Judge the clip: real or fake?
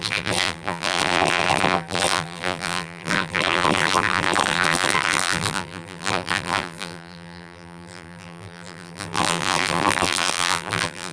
fake